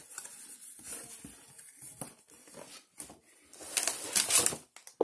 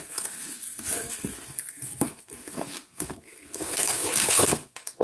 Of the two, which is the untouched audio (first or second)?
first